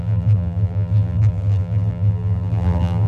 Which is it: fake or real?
fake